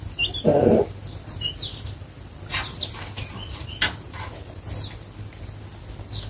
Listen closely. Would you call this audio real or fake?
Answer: real